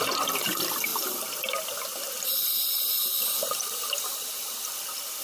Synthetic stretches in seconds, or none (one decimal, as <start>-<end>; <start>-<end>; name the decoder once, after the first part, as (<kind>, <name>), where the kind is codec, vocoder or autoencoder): 0.0-5.2 (vocoder, BigVGAN v2)